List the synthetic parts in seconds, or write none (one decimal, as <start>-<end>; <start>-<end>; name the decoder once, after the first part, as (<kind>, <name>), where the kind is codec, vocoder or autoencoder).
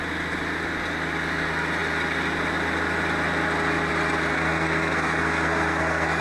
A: 4.3-6.2 (codec, SNAC)